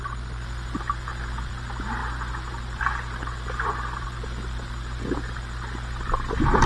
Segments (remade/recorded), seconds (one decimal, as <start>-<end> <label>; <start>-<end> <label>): 0.0-6.7 recorded